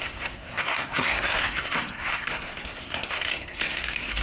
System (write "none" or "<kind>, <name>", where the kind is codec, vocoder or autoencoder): codec, SNAC